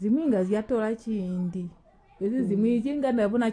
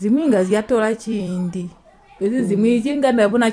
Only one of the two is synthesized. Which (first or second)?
second